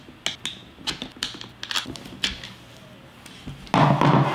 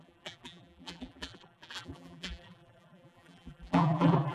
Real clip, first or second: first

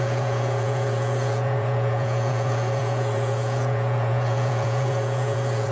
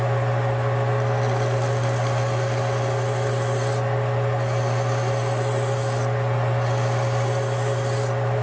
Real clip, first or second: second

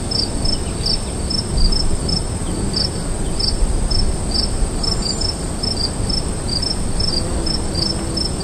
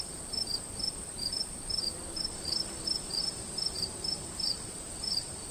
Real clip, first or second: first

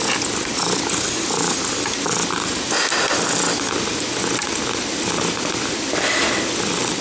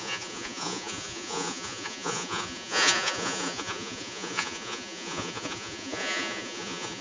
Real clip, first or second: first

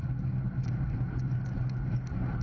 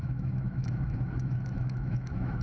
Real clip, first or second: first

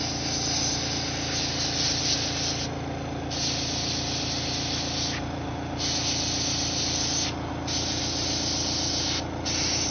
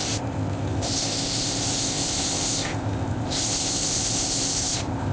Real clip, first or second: first